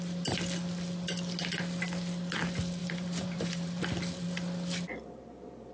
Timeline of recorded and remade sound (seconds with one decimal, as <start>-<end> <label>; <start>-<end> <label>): 0.0-2.8 recorded; 2.8-3.8 remade; 3.8-5.7 recorded